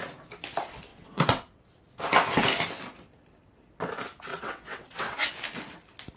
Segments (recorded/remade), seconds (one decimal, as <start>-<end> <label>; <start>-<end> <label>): 0.0-0.9 recorded; 0.9-1.6 remade; 1.6-4.3 recorded; 4.3-5.3 remade; 5.3-6.2 recorded